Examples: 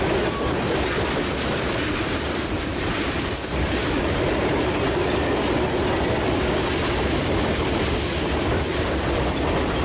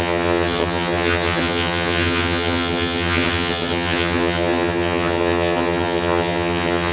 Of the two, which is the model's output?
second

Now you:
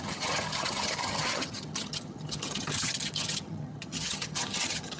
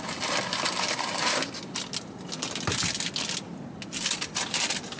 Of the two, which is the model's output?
first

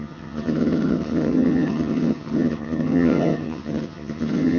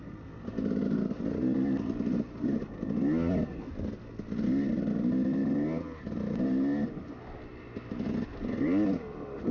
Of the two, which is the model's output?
first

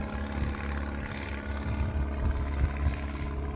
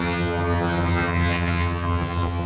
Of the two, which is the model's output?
second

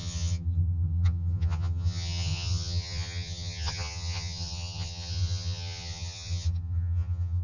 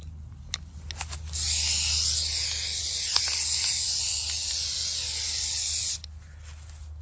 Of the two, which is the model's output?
first